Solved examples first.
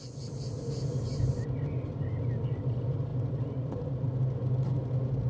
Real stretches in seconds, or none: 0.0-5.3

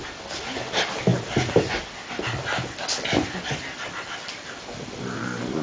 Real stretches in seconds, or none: 0.0-5.6

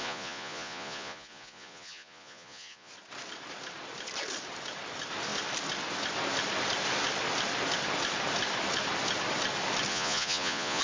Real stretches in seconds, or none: 2.9-9.9

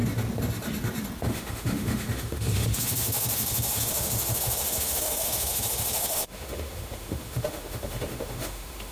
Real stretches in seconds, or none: 0.0-1.2

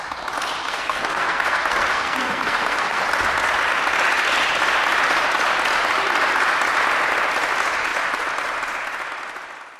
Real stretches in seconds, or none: 0.0-0.6; 3.0-9.8